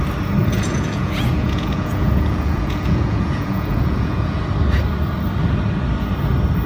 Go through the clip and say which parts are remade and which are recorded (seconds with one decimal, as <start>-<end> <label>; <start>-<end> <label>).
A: 0.0-0.4 recorded; 0.4-4.4 remade; 4.4-6.7 recorded